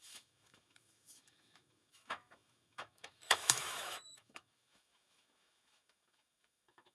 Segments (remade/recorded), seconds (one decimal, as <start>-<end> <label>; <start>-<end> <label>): 0.0-6.9 remade